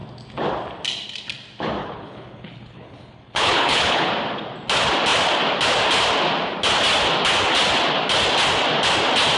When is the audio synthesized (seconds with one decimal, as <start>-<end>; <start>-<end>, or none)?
1.8-4.1